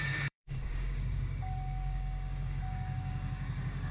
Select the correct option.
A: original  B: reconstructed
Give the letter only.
B